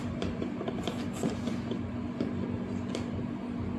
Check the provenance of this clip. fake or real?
real